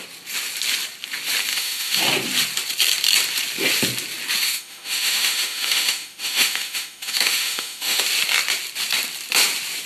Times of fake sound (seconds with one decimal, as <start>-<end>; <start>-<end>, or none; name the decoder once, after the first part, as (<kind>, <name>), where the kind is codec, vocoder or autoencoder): 1.5-2.0 (autoencoder, DAC-VAE); 4.4-8.0